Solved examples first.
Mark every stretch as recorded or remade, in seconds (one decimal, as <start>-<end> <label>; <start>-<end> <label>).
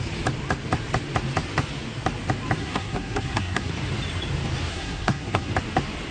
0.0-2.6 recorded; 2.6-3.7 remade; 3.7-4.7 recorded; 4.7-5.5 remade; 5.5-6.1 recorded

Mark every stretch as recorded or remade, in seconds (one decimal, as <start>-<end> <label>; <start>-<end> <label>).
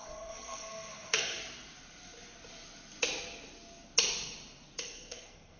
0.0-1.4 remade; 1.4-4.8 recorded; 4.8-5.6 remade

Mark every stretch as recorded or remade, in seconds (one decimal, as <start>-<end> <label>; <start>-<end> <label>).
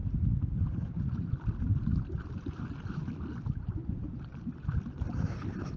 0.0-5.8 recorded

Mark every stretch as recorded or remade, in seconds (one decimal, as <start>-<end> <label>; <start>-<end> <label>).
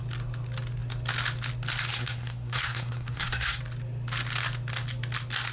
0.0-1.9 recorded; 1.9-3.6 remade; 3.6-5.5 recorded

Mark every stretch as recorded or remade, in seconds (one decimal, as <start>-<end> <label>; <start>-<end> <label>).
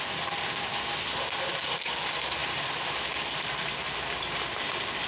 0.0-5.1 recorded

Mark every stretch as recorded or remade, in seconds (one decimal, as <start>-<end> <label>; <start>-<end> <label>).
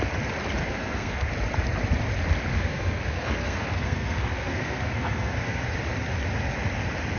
0.0-0.6 recorded; 0.6-1.3 remade; 1.3-2.5 recorded; 2.5-5.6 remade; 5.6-7.2 recorded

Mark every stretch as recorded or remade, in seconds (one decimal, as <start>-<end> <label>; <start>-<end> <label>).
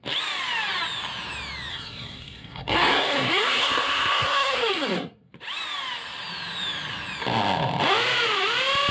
0.0-1.7 recorded; 1.7-5.3 remade; 5.3-8.9 recorded